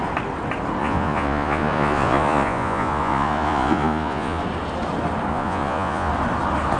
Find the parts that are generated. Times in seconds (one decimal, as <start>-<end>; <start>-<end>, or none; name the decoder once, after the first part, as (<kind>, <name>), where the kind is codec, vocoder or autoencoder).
0.8-4.4 (vocoder, Vocos); 5.3-6.1